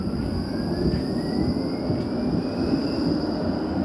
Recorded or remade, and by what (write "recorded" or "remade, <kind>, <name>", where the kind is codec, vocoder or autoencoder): recorded